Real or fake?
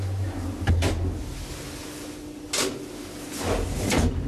real